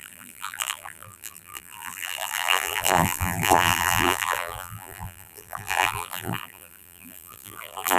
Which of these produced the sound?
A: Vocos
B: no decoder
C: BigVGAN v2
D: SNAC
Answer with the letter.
C